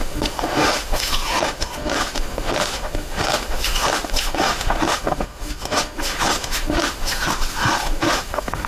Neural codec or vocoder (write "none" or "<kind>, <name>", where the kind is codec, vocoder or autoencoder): autoencoder, DAC-VAE